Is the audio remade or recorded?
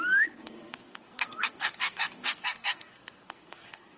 remade